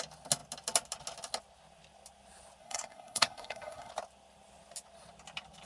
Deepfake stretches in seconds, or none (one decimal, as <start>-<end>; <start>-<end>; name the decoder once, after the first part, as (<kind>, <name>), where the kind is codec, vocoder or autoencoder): 2.6-3.9 (codec, SNAC)